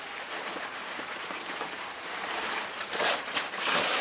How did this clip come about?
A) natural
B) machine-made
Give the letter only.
B